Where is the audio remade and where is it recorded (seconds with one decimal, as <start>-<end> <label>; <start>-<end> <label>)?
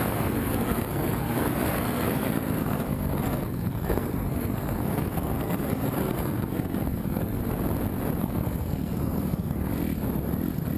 0.0-7.4 remade; 7.4-8.2 recorded; 8.2-9.7 remade; 9.7-10.8 recorded